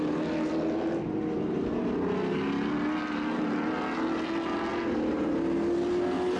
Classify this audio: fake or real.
real